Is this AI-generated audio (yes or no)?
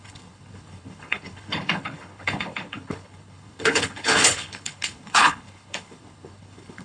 yes